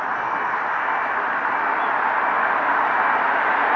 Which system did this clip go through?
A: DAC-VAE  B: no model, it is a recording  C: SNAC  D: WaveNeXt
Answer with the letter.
B